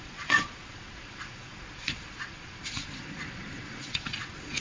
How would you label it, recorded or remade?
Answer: remade